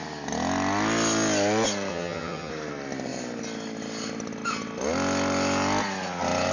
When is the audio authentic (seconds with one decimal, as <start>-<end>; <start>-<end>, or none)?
0.0-1.9; 2.5-6.5